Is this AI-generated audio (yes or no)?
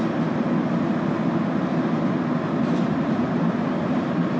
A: no